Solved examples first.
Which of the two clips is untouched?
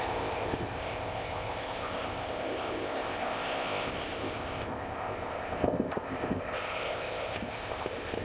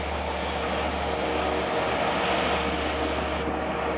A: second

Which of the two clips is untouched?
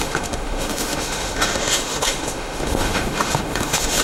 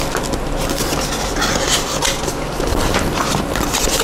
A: second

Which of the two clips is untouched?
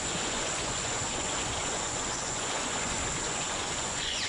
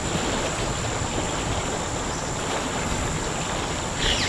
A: second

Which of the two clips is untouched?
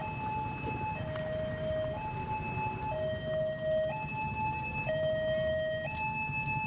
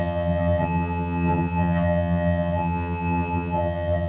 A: first